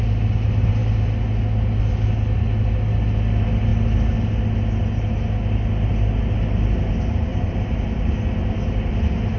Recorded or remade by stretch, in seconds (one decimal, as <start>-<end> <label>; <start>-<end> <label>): 0.0-9.4 recorded